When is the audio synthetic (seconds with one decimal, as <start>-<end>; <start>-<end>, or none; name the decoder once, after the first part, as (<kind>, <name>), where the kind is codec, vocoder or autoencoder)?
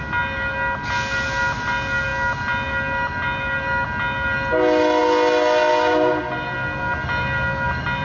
none